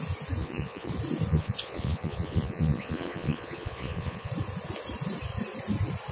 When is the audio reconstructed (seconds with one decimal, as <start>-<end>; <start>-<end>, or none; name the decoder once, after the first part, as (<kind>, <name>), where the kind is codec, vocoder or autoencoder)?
0.4-0.9 (vocoder, Vocos); 1.3-4.3

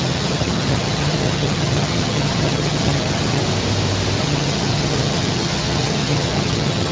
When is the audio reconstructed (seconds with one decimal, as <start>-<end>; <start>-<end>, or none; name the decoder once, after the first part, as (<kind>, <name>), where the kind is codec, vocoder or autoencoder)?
0.0-3.4 (vocoder, HiFi-GAN); 4.2-6.9

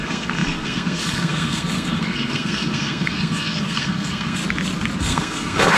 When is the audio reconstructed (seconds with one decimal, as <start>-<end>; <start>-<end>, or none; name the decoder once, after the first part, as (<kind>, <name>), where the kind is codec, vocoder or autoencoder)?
0.0-4.4 (codec, SNAC); 5.0-5.8

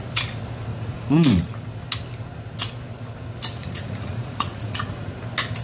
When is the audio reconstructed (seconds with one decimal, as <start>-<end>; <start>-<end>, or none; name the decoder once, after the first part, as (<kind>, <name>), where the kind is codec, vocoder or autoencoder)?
0.7-1.5 (vocoder, Vocos); 3.6-5.1

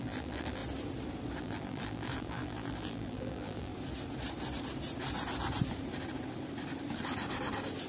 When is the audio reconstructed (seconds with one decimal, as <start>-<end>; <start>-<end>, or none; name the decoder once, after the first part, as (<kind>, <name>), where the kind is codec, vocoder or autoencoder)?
0.0-0.6 (vocoder, BigVGAN v2); 1.4-3.7

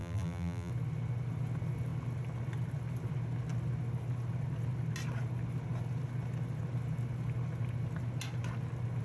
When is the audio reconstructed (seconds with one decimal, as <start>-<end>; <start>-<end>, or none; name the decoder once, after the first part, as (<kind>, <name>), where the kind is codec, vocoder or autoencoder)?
0.0-0.7 (vocoder, BigVGAN v2)

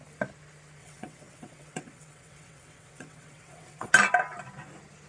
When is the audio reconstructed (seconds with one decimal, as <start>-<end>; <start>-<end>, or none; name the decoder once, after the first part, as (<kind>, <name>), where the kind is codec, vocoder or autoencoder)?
0.8-3.9 (vocoder, WaveNeXt)

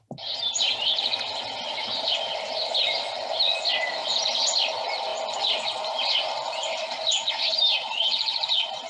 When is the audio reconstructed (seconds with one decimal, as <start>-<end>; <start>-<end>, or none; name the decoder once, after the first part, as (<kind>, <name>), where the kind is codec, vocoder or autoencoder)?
none